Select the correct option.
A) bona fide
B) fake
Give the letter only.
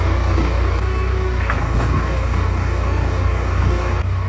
B